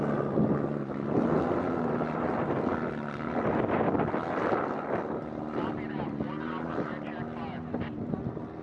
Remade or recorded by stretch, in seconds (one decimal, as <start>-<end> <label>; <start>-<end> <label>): 0.0-8.6 recorded

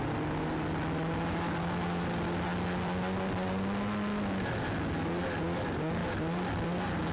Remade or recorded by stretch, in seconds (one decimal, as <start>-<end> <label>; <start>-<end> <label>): 0.0-7.1 recorded

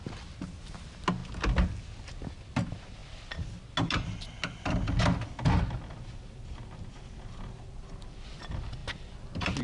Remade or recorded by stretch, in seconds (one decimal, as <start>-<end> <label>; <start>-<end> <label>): 0.0-9.6 recorded

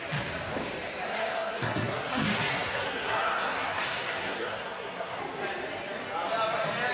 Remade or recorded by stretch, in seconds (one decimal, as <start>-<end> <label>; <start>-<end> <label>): 0.0-1.1 recorded; 1.1-5.2 remade; 5.2-6.9 recorded

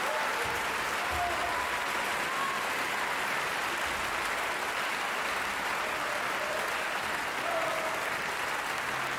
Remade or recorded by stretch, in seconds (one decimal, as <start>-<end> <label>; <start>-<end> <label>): 0.0-9.2 recorded

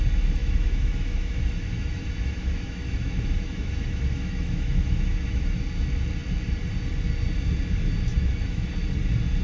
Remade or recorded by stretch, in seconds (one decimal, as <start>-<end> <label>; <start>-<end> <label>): 0.0-0.4 recorded; 0.4-5.6 remade; 5.6-8.1 recorded; 8.1-8.7 remade; 8.7-9.4 recorded

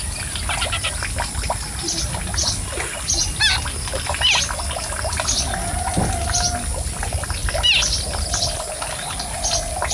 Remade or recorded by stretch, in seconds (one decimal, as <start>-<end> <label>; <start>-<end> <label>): 0.0-9.9 recorded

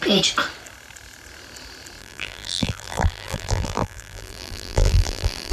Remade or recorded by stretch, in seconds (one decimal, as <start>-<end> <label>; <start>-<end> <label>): 0.0-2.0 recorded; 2.0-5.5 remade